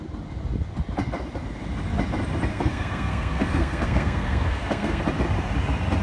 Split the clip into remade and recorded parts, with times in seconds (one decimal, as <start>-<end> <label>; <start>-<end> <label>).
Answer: 0.0-2.5 recorded; 2.5-5.0 remade; 5.0-6.0 recorded